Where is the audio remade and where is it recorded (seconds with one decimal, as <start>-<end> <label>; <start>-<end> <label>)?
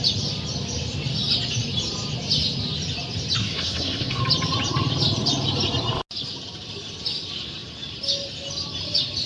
0.0-3.4 recorded; 3.4-4.2 remade; 4.2-9.3 recorded